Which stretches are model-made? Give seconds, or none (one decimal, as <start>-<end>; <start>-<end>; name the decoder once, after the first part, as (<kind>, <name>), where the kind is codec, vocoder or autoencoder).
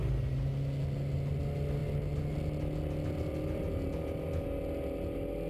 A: none